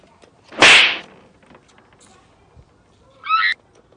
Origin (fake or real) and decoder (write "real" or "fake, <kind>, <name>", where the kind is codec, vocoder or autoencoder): real